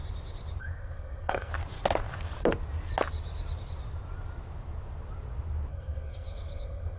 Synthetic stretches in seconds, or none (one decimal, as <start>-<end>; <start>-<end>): 0.6-1.5; 5.7-7.0